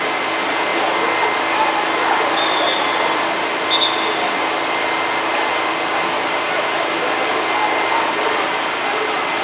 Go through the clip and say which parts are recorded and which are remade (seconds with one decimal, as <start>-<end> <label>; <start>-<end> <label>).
0.0-9.4 recorded